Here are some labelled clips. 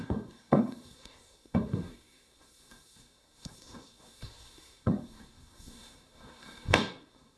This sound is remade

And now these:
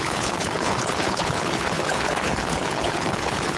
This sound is remade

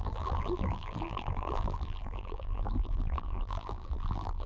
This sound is remade